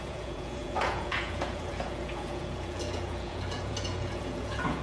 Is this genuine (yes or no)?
no